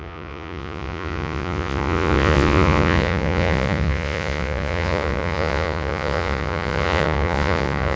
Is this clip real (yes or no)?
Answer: no